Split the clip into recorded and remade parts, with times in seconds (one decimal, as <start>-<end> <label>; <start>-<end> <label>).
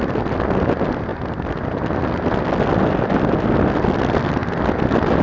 0.0-5.2 recorded